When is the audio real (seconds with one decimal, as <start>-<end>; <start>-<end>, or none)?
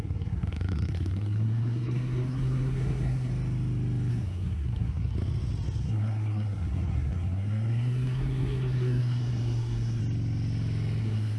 3.3-4.1; 5.1-5.8; 10.0-11.0